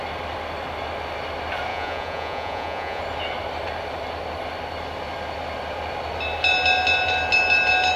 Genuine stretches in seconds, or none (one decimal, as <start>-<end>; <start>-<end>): 0.0-1.7; 3.0-8.0